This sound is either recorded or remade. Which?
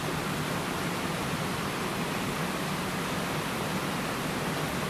recorded